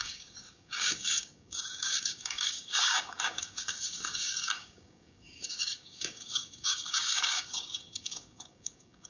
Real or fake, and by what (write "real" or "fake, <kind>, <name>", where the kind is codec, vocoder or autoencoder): fake, codec, DAC